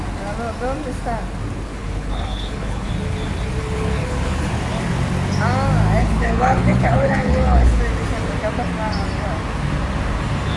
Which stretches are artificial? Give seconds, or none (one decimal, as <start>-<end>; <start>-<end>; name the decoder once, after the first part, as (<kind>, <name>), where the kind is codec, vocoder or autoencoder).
1.7-2.9 (codec, HILCodec); 3.6-4.5; 6.0-7.8